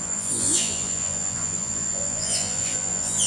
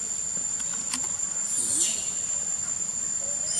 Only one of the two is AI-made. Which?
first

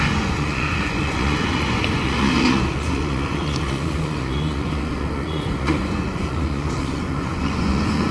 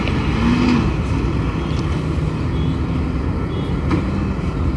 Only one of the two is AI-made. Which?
first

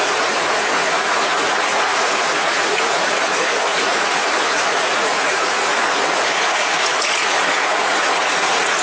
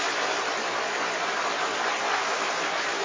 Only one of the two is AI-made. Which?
first